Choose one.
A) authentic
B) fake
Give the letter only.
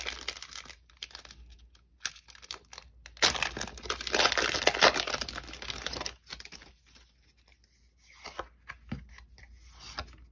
A